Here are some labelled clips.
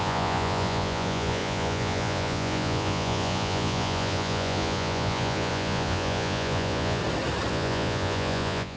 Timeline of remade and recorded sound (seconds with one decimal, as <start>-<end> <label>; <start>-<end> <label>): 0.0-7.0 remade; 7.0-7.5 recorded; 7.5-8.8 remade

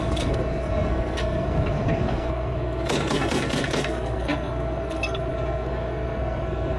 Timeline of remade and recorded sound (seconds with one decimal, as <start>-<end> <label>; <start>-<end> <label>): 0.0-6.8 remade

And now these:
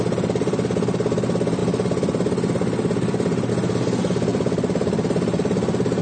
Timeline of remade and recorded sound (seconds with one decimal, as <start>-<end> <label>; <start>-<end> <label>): 0.0-4.3 recorded; 4.3-6.0 remade

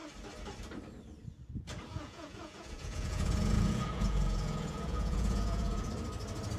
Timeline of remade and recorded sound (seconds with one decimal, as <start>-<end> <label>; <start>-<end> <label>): 0.0-1.9 recorded; 1.9-5.9 remade; 5.9-6.6 recorded

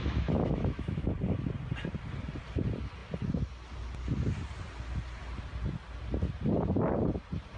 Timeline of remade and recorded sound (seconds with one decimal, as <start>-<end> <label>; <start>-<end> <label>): 0.0-1.1 remade; 1.1-7.6 recorded

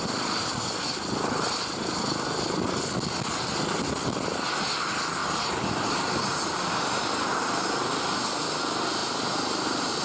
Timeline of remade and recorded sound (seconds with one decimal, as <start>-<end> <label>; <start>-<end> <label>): 0.0-5.2 recorded; 5.2-7.4 remade; 7.4-9.0 recorded; 9.0-10.0 remade